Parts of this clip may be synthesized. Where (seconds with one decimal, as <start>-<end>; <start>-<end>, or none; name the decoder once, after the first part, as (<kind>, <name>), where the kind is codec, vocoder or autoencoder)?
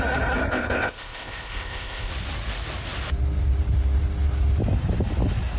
0.5-2.1 (codec, ZipCodec)